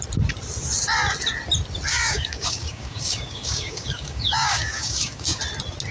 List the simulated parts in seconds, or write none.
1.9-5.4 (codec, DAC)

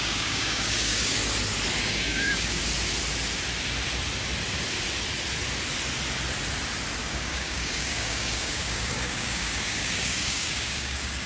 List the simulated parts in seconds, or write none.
0.0-1.2 (codec, DAC); 1.8-2.6; 7.0-11.3

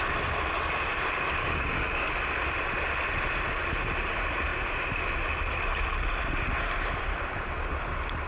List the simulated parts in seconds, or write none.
1.4-2.2 (codec, DAC)

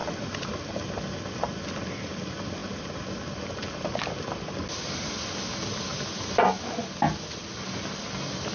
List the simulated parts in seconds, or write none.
none

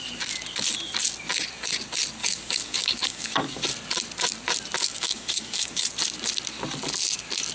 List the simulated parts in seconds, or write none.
2.2-3.7 (codec, DAC); 4.8-5.9

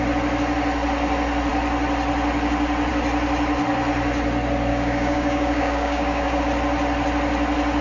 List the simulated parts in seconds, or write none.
4.7-6.4 (codec, DAC)